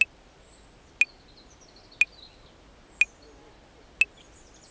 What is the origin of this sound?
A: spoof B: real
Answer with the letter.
B